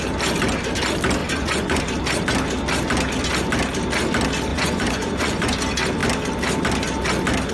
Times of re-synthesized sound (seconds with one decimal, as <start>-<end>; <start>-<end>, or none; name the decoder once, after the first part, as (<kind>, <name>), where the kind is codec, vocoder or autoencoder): 1.2-1.8 (vocoder, Vocos); 4.5-5.5